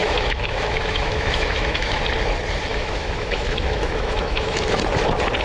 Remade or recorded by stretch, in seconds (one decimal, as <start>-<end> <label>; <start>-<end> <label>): 0.0-2.0 remade; 2.0-2.7 recorded; 2.7-4.8 remade; 4.8-5.4 recorded